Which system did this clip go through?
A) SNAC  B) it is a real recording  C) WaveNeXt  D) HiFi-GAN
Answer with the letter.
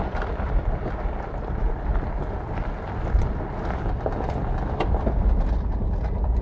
B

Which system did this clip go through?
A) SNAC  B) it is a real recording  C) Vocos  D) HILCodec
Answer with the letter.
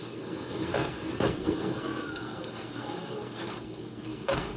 A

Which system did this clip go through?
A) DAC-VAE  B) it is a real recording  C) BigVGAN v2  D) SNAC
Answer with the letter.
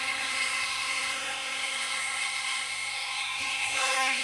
D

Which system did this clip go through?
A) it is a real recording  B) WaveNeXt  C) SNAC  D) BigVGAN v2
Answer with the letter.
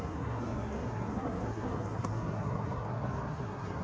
C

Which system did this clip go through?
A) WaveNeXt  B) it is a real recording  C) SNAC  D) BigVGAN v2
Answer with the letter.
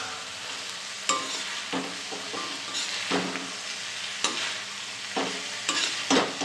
B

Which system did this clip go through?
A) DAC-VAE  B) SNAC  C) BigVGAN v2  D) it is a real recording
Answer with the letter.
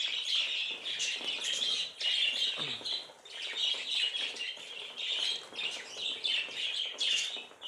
D